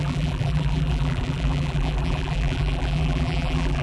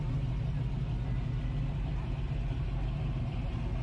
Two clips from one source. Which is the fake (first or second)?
first